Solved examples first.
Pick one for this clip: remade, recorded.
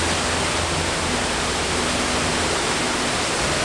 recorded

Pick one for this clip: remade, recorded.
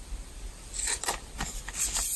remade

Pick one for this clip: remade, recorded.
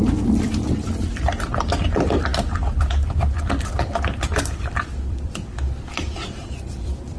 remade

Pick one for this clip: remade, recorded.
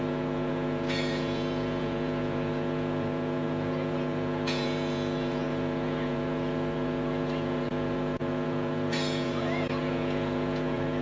remade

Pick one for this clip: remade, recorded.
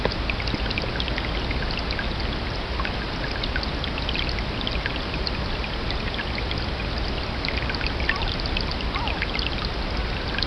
recorded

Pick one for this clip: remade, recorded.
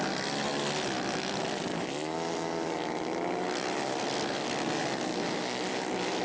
recorded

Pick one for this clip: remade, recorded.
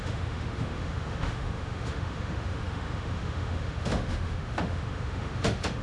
remade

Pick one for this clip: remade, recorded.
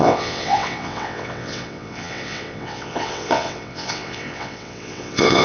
remade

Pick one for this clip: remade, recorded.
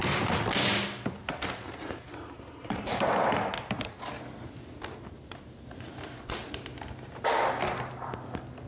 recorded